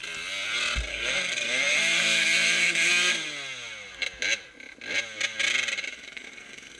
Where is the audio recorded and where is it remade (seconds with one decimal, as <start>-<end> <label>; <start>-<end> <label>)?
0.0-0.9 recorded; 0.9-2.9 remade; 2.9-5.9 recorded; 5.9-6.8 remade